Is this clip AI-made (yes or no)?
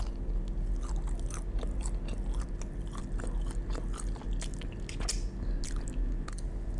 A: no